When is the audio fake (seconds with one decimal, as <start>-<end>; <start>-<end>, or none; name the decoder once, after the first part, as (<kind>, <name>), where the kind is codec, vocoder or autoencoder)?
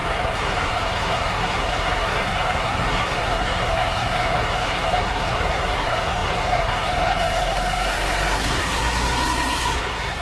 0.0-10.2 (codec, SNAC)